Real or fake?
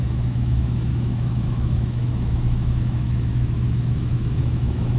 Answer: fake